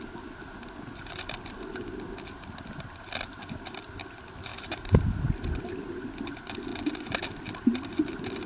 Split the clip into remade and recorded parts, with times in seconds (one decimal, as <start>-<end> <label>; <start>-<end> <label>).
0.0-4.5 recorded; 4.5-5.2 remade; 5.2-8.5 recorded